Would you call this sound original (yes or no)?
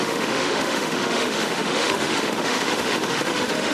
no